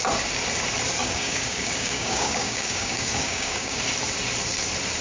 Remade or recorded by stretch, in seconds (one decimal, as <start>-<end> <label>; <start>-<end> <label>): 0.0-1.0 recorded; 1.0-3.8 remade; 3.8-5.0 recorded